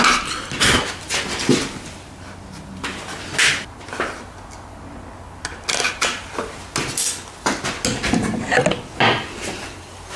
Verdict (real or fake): real